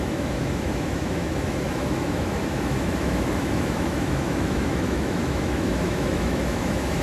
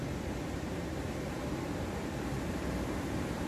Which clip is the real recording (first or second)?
second